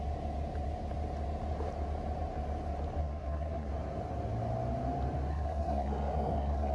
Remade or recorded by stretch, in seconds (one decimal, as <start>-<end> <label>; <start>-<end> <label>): 0.0-3.0 recorded; 3.0-3.7 remade; 3.7-5.3 recorded; 5.3-6.7 remade